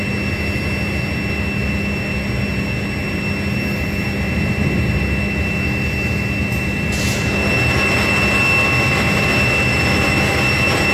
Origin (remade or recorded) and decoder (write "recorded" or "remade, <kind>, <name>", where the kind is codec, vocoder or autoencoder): recorded